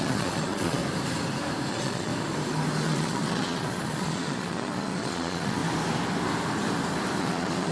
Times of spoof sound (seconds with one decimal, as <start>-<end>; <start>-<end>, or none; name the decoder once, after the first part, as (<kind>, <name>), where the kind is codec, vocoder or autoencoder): 0.0-0.8 (vocoder, Vocos); 1.7-2.1; 2.8-5.6; 7.2-7.7